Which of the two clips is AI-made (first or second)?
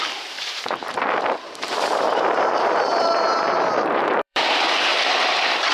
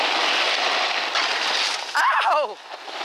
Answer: first